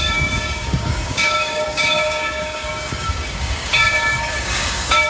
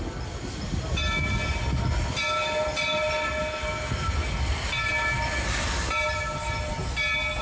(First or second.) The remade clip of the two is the first